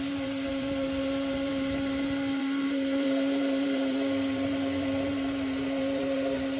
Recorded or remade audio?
remade